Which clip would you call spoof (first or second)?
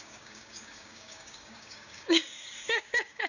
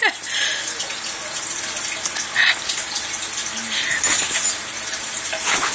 first